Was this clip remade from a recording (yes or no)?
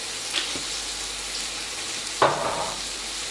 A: yes